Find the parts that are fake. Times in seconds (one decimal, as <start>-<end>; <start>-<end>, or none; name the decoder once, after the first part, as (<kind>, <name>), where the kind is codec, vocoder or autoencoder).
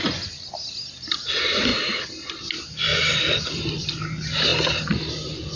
2.9-3.9 (vocoder, BigVGAN v2)